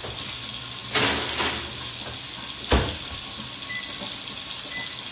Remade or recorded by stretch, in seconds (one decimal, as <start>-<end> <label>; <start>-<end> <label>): 0.0-5.1 recorded